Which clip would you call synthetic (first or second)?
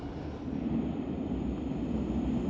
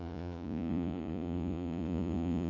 second